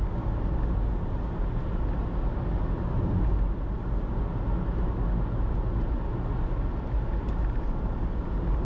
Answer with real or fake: real